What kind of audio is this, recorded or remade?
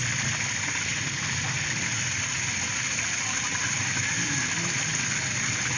recorded